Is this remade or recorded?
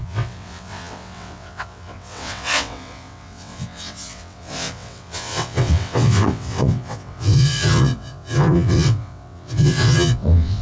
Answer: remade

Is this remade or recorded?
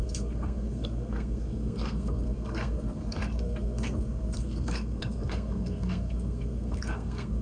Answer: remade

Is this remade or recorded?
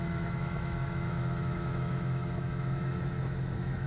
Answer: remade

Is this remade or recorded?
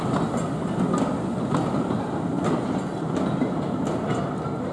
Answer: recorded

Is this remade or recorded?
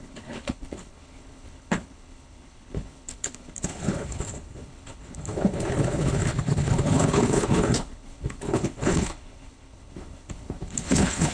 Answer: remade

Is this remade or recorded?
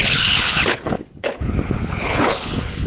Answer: remade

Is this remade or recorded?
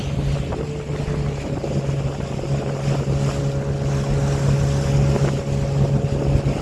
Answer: recorded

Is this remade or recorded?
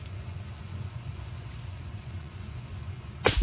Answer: remade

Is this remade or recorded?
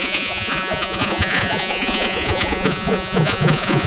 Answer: remade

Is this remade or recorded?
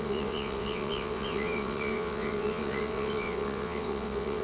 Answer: remade